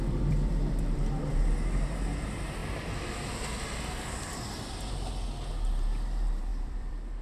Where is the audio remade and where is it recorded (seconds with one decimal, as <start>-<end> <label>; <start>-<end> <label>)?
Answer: 0.0-1.1 remade; 1.1-6.5 recorded; 6.5-7.2 remade